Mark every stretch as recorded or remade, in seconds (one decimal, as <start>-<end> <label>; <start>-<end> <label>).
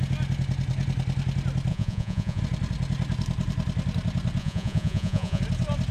0.0-1.7 recorded; 1.7-2.4 remade; 2.4-4.4 recorded; 4.4-5.4 remade; 5.4-5.9 recorded